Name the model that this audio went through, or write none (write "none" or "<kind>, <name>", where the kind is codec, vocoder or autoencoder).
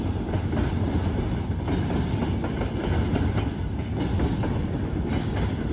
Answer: none